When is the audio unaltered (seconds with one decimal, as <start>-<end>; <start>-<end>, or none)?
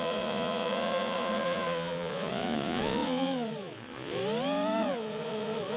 4.2-4.8